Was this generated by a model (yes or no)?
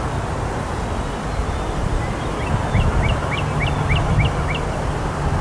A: no